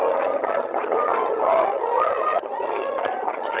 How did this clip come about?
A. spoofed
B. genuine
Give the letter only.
A